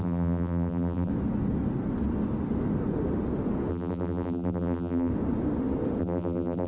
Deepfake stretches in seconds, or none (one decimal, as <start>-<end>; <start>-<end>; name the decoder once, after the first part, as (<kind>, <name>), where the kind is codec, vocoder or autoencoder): 0.0-1.1 (vocoder, BigVGAN v2); 3.7-5.1; 6.0-6.7